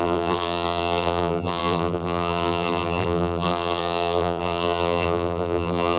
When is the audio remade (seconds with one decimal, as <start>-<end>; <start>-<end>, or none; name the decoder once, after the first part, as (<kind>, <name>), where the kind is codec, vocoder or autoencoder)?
0.0-6.0 (vocoder, BigVGAN v2)